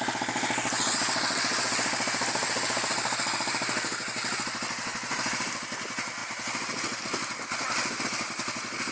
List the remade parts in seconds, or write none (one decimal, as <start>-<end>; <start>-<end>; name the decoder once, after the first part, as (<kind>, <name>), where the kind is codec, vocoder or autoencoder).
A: 2.4-5.6 (vocoder, BigVGAN v2)